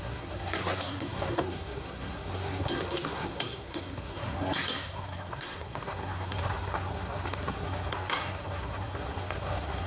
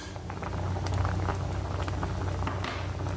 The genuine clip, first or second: second